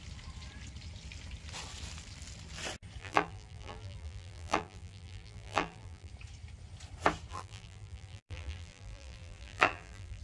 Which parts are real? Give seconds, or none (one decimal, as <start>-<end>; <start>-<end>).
0.0-3.0; 6.1-7.3